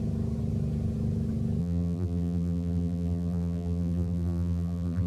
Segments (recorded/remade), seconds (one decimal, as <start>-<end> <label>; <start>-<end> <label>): 0.0-1.6 recorded; 1.6-5.1 remade